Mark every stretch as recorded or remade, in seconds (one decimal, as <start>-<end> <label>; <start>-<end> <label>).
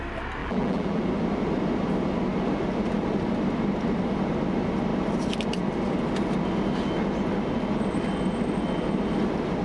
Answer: 0.0-0.4 recorded; 0.4-1.0 remade; 1.0-9.6 recorded